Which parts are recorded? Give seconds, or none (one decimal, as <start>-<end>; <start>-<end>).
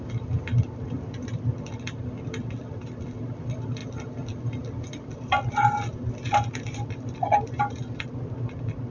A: 3.8-4.8